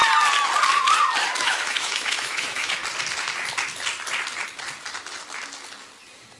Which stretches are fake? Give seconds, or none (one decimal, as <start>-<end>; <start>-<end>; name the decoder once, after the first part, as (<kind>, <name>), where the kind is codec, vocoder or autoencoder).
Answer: 1.4-2.8 (autoencoder, DAC-VAE)